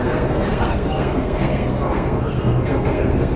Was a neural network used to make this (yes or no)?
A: yes